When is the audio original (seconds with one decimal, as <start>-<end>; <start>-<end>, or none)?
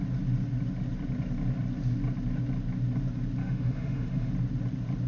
0.0-3.4; 4.3-5.1